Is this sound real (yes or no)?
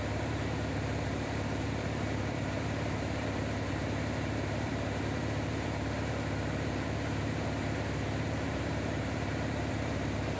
no